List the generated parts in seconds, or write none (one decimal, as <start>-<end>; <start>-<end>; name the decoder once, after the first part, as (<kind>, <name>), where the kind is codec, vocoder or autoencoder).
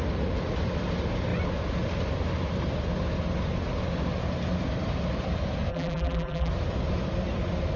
5.7-6.5 (vocoder, BigVGAN v2)